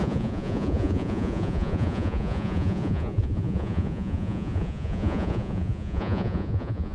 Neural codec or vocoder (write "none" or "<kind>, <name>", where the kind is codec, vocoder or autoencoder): vocoder, Vocos